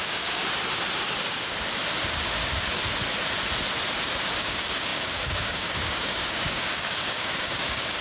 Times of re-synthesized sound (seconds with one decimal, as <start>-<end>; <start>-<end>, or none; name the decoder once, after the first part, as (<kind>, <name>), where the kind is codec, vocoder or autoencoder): 0.0-0.4 (codec, DAC); 4.4-8.0

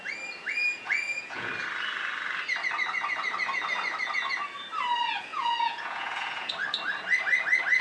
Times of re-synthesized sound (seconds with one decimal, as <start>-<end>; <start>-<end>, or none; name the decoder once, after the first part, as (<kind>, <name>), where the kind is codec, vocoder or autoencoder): 0.6-1.5 (vocoder, Vocos); 5.3-6.5

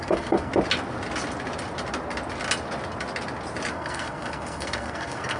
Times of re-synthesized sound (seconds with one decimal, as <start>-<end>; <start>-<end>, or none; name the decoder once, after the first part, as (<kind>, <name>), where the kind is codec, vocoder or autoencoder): 0.0-0.5 (codec, SNAC); 3.7-5.4

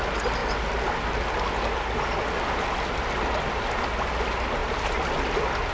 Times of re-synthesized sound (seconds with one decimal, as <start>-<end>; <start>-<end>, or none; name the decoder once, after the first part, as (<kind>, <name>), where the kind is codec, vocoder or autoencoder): 4.6-5.2 (vocoder, BigVGAN v2)

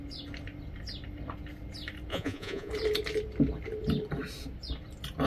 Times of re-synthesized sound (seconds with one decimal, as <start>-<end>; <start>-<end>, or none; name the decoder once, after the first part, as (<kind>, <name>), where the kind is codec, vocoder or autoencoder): 2.1-2.7 (vocoder, Vocos)